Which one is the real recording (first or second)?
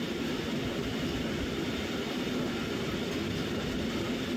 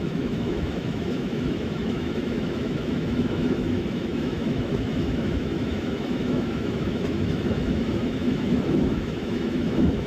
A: first